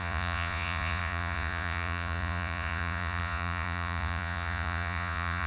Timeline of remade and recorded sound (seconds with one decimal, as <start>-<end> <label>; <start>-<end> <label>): 0.0-5.5 remade